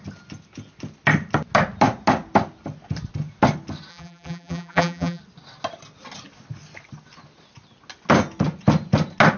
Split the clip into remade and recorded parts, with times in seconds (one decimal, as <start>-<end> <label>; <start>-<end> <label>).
0.0-3.9 recorded; 3.9-5.2 remade; 5.2-9.4 recorded

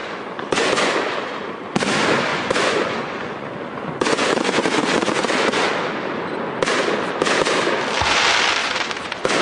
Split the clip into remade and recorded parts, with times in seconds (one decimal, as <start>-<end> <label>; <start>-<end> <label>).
0.0-0.9 remade; 0.9-2.3 recorded; 2.3-5.7 remade; 5.7-8.6 recorded; 8.6-9.4 remade